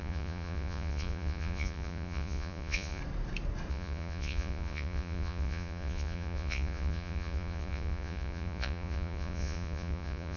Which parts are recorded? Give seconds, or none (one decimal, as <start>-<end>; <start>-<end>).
3.0-3.7